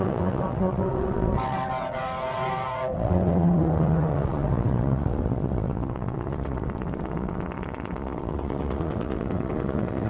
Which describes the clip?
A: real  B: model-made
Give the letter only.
B